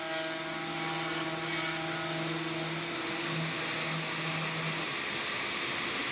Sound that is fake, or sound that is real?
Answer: real